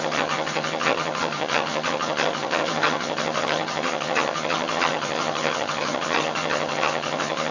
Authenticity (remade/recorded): remade